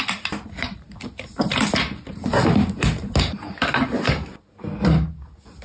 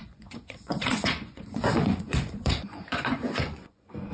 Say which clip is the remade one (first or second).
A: second